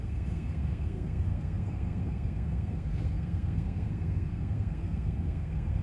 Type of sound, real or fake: fake